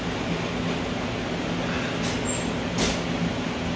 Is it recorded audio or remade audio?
recorded